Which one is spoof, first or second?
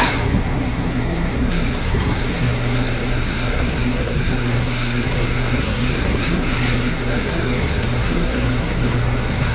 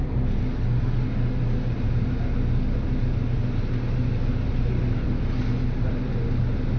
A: first